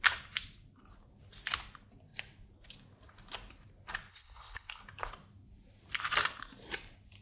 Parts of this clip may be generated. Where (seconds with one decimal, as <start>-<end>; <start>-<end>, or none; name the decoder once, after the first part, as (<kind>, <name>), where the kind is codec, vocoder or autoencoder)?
4.1-4.8 (codec, HILCodec)